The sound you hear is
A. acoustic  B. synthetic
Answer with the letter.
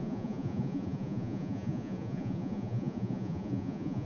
B